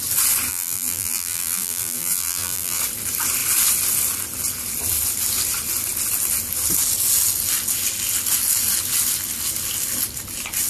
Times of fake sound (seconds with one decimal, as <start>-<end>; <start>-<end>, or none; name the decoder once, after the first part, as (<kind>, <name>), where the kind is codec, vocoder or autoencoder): 0.5-2.8 (vocoder, BigVGAN v2)